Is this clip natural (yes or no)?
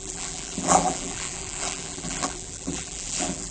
no